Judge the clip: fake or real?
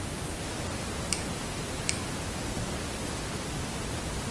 real